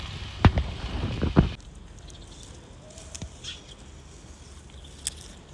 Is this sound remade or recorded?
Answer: recorded